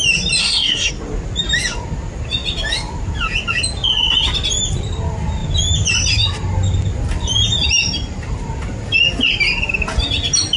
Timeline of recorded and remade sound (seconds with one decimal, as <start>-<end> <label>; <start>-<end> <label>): 0.0-0.4 recorded; 0.4-0.9 remade; 0.9-10.6 recorded